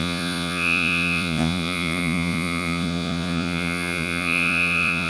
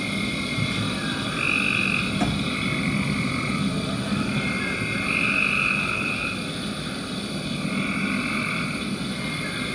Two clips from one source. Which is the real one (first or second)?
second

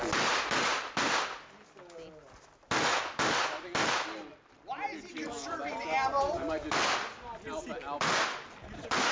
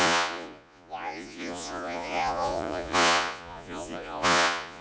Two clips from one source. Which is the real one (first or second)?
first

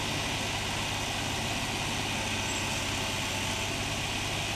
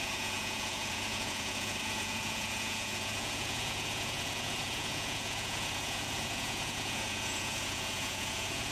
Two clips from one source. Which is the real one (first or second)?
first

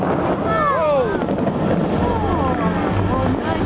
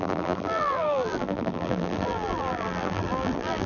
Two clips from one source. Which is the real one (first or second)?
first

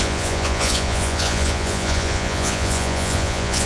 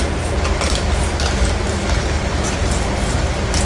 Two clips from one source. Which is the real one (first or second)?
second